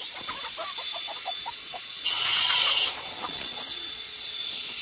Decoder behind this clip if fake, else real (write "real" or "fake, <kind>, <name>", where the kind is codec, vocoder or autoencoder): fake, vocoder, Vocos